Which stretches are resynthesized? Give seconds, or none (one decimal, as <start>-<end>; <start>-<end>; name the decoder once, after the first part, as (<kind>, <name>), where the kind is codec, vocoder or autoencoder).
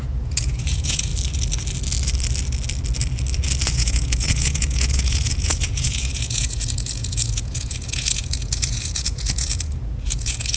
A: 0.0-1.1 (vocoder, Vocos); 3.7-10.6